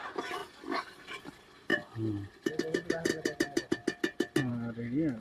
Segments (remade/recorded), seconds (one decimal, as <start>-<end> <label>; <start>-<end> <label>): 0.0-5.2 recorded